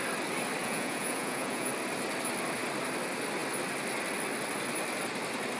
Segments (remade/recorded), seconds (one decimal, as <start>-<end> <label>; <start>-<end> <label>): 0.0-0.6 recorded; 0.6-1.7 remade; 1.7-5.6 recorded